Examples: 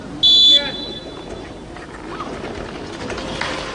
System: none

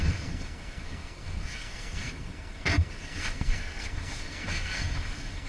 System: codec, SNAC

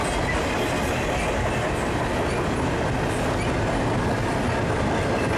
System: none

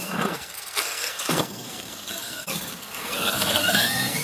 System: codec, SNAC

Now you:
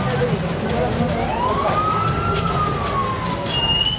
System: none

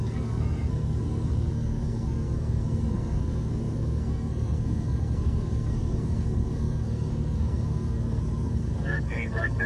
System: codec, SNAC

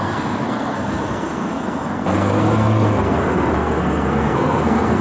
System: codec, SNAC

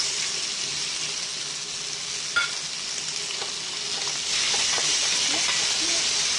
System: none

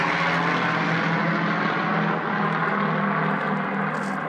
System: none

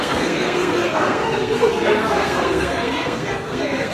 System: codec, SNAC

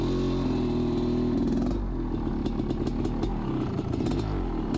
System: none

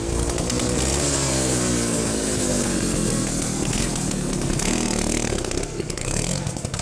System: codec, SNAC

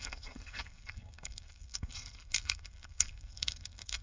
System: codec, SNAC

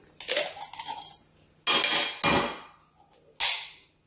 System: none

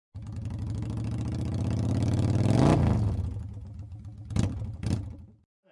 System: none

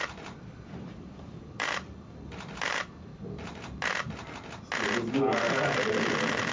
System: none